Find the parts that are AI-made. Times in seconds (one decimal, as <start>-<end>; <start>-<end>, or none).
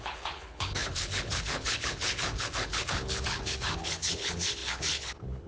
0.0-5.5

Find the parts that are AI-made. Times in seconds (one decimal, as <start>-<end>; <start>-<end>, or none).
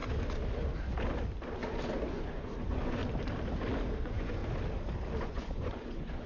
2.1-3.0; 4.0-4.4; 5.2-6.3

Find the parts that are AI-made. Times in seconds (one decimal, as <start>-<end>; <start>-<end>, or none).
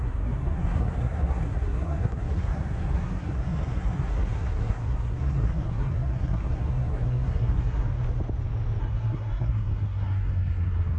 0.0-7.9; 8.8-11.0